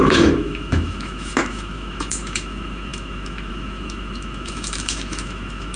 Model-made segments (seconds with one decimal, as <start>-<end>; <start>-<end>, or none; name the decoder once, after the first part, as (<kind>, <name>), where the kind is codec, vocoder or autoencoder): 0.0-5.8 (autoencoder, DAC-VAE)